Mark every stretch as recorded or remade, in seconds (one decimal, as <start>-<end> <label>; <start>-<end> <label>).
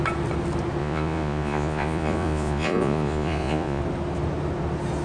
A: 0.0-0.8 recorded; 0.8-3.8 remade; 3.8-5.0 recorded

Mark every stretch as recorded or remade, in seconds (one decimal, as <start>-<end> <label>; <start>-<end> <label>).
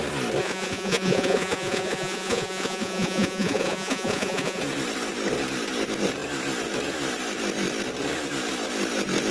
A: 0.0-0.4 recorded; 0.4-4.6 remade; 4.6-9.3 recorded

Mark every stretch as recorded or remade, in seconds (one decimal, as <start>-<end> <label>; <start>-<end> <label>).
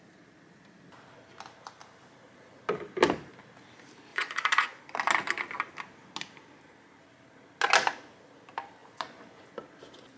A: 0.0-4.1 recorded; 4.1-4.8 remade; 4.8-8.8 recorded; 8.8-9.5 remade; 9.5-10.2 recorded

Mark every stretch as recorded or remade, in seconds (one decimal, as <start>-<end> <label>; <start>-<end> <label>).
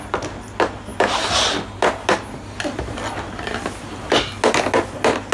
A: 0.0-5.3 recorded